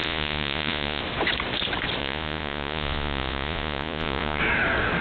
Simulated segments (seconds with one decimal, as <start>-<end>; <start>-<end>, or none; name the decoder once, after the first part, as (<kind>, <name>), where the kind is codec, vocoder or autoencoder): 0.0-1.0 (vocoder, Vocos); 2.0-4.4